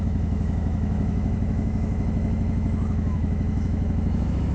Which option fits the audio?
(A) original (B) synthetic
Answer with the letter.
B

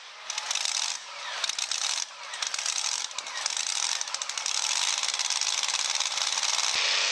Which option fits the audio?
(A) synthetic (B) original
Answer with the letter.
B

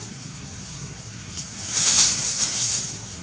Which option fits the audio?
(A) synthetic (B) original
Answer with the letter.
A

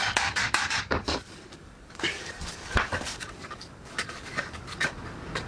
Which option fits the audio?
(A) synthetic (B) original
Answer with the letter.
A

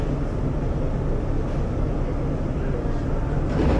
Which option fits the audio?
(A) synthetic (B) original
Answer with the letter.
B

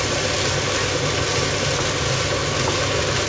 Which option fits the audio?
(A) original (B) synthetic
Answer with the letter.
A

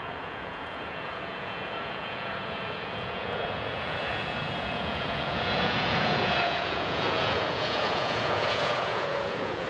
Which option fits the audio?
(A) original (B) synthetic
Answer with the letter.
B